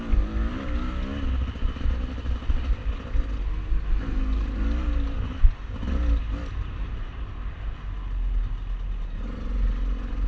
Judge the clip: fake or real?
real